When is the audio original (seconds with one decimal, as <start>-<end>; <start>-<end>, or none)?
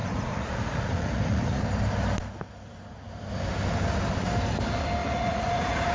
1.6-5.0